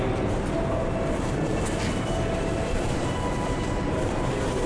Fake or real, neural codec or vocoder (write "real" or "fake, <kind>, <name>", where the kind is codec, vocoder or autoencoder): real